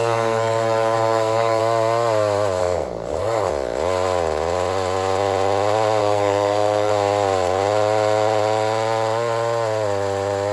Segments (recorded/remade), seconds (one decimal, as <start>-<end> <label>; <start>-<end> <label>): 0.0-1.6 remade; 1.6-2.6 recorded; 2.6-3.5 remade; 3.5-6.0 recorded; 6.0-6.9 remade; 6.9-10.5 recorded